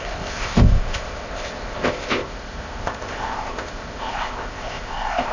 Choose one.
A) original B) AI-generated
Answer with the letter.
B